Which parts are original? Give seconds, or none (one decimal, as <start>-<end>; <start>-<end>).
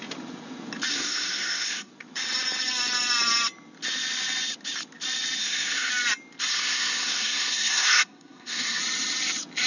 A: 0.0-0.9; 1.9-5.4; 5.9-6.5; 8.8-9.7